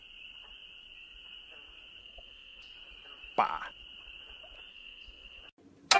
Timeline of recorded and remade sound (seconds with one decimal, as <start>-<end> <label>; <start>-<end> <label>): 0.0-2.0 recorded; 2.0-2.6 remade; 2.6-4.7 recorded; 4.7-5.4 remade; 5.4-6.0 recorded